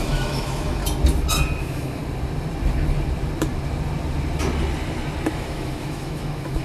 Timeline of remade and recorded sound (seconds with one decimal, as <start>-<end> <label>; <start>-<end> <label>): 0.0-0.8 remade; 0.8-1.6 recorded; 1.6-2.0 remade; 2.0-5.3 recorded; 5.3-6.6 remade

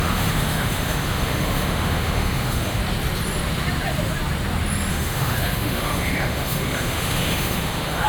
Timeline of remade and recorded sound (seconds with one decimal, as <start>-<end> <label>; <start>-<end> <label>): 0.0-2.8 remade; 2.8-4.9 recorded; 4.9-8.1 remade

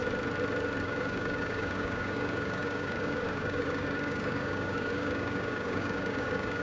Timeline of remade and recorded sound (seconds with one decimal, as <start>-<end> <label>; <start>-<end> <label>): 0.0-0.8 recorded; 0.8-6.6 remade

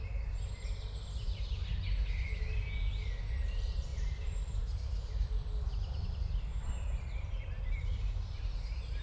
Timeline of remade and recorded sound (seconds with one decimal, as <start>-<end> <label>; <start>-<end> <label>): 0.0-1.7 remade; 1.7-3.3 recorded; 3.3-5.2 remade; 5.2-6.2 recorded; 6.2-9.0 remade

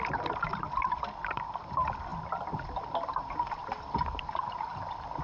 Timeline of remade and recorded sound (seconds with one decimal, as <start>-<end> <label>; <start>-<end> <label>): 0.0-5.2 recorded

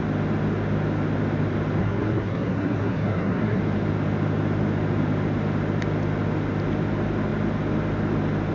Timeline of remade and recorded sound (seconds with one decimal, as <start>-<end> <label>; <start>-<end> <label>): 0.0-1.8 recorded; 1.8-3.6 remade; 3.6-8.5 recorded

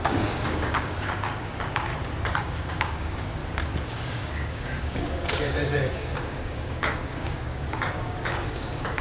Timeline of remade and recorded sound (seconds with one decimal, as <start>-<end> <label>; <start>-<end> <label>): 0.0-1.9 remade; 1.9-2.4 recorded; 2.4-3.4 remade; 3.4-3.9 recorded; 3.9-9.0 remade

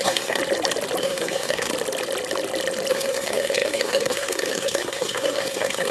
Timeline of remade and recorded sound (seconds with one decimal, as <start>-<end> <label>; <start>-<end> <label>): 0.0-0.4 remade; 0.4-1.0 recorded; 1.0-1.7 remade; 1.7-2.9 recorded; 2.9-5.9 remade